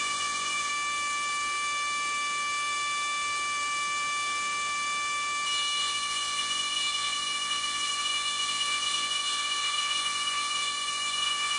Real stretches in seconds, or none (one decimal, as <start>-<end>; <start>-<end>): 0.7-5.8